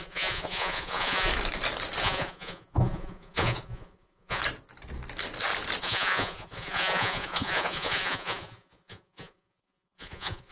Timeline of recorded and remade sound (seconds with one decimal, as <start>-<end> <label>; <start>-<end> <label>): 0.0-1.3 remade; 1.3-2.0 recorded; 2.0-4.4 remade; 4.4-5.8 recorded; 5.8-10.5 remade